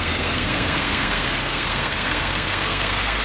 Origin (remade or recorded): remade